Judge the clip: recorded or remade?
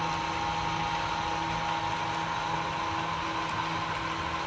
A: recorded